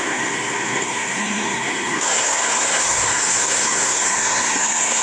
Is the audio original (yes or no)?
no